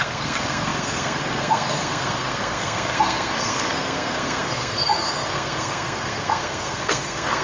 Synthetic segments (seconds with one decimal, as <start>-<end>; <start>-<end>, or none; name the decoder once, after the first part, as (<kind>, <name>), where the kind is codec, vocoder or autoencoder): 0.0-7.4 (codec, SNAC)